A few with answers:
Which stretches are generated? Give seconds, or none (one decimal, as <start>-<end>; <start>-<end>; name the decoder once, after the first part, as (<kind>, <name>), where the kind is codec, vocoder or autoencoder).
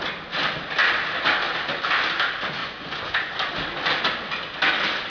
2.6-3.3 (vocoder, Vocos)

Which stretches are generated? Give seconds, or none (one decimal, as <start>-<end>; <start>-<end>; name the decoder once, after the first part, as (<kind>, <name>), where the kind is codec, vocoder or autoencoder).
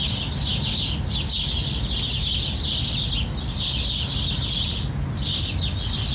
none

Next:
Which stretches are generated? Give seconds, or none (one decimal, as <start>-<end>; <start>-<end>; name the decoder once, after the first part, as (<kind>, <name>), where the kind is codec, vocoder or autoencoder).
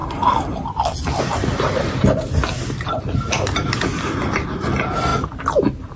none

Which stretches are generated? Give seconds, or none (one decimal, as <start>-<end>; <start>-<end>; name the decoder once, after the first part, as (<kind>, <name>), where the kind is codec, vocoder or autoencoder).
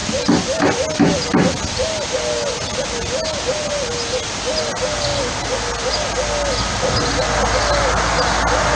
none